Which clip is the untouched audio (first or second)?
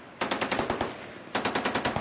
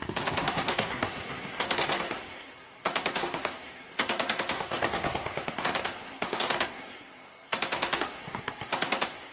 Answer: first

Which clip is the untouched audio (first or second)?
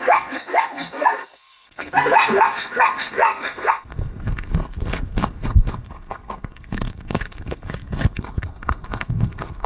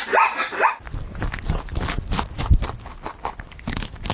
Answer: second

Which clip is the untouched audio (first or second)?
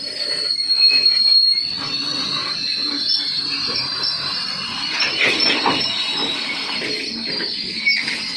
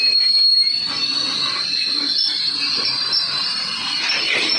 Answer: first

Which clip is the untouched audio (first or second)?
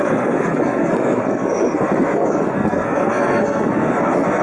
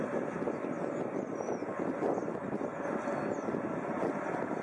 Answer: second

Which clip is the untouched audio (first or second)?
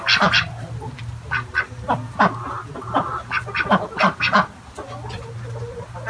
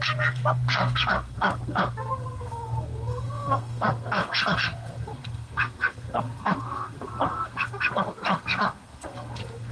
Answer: first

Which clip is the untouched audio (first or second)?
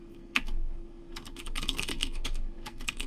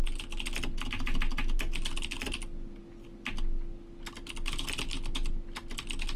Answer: second